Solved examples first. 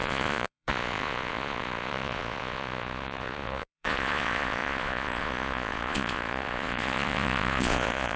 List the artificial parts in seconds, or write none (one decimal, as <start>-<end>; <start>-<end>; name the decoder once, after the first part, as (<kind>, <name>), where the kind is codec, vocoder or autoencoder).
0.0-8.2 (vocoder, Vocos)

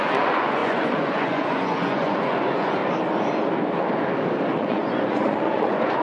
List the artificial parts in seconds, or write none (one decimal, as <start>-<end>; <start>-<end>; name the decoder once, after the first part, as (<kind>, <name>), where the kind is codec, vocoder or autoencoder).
0.0-2.8 (vocoder, Vocos); 4.6-6.0

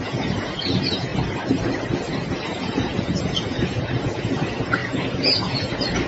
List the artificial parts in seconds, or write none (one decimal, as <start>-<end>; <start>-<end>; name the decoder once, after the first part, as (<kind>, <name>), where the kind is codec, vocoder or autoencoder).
0.0-1.1 (vocoder, Vocos); 2.6-6.1

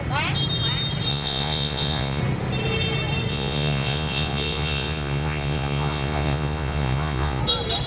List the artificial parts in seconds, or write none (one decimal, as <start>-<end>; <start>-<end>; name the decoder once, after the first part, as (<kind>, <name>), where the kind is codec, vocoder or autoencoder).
1.1-2.2 (vocoder, Vocos); 3.3-7.4

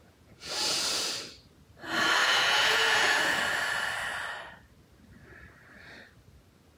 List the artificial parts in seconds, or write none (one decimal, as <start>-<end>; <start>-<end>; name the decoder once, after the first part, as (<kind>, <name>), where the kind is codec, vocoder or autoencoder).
0.0-1.0 (vocoder, Vocos); 2.2-3.4